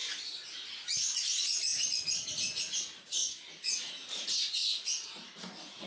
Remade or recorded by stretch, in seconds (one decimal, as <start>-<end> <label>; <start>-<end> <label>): 0.0-0.7 recorded; 0.7-5.9 remade